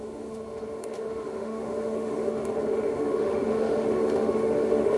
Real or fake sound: fake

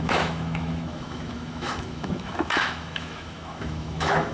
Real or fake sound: fake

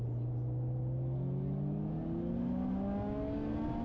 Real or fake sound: real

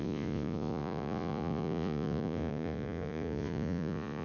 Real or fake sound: fake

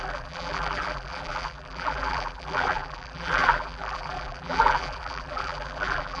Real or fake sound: fake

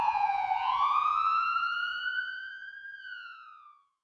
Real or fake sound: fake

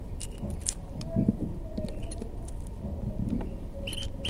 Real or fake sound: real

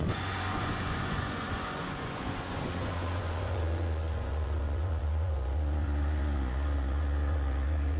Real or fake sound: fake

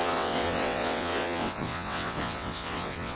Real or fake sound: fake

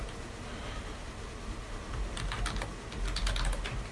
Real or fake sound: real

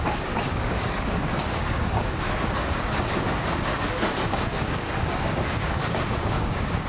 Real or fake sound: fake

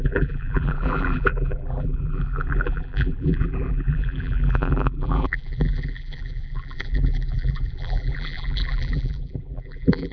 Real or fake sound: fake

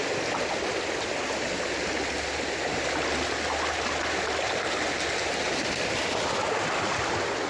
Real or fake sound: real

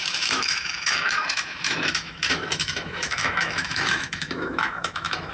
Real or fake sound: fake